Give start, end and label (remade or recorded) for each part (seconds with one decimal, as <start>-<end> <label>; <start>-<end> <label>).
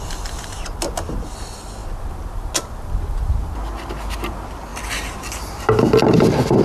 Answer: 0.0-4.7 recorded; 4.7-6.6 remade